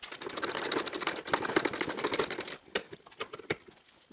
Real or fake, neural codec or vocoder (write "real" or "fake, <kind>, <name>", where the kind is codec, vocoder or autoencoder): real